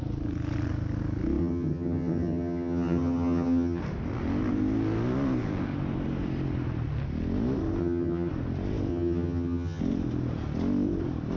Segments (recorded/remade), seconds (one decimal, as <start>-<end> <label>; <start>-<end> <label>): 0.0-1.4 recorded; 1.4-3.8 remade; 3.8-7.8 recorded; 7.8-8.3 remade; 8.3-8.9 recorded; 8.9-9.8 remade; 9.8-11.4 recorded